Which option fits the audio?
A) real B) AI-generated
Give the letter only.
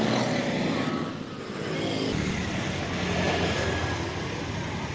A